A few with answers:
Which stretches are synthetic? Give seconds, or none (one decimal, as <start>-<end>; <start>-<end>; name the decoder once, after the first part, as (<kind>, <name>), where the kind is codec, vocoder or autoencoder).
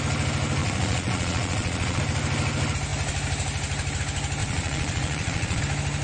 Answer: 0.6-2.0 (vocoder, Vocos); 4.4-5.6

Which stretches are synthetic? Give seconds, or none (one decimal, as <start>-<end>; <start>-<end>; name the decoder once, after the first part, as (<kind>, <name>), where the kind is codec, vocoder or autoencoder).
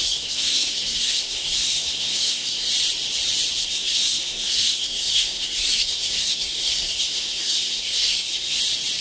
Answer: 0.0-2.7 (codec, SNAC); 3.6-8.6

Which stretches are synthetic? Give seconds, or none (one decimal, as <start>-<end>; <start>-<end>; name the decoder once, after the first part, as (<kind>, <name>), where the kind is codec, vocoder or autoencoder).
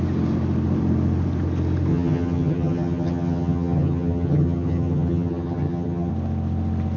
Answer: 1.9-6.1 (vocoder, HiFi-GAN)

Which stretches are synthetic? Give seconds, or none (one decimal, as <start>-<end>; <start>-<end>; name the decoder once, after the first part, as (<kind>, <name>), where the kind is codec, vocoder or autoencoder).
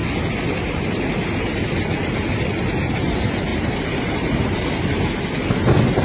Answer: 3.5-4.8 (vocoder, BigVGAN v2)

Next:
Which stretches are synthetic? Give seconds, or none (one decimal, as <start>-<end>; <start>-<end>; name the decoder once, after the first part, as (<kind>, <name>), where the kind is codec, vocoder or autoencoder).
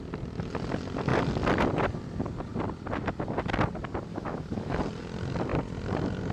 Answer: 4.1-4.8 (autoencoder, DAC-VAE)